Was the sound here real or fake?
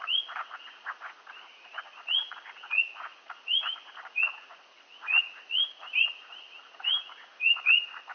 fake